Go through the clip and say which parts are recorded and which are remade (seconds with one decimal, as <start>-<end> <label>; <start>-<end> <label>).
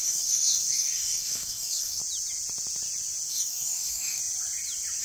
0.0-2.0 remade; 2.0-3.3 recorded; 3.3-4.2 remade; 4.2-5.0 recorded